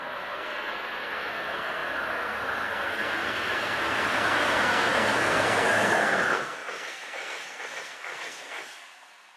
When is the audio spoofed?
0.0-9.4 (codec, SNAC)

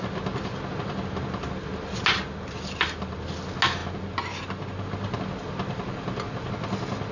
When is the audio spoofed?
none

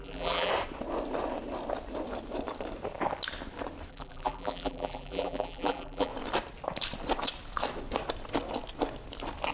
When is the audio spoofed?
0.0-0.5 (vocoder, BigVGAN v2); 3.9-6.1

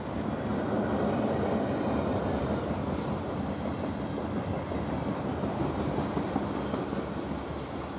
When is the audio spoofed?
0.5-4.5 (vocoder, BigVGAN v2)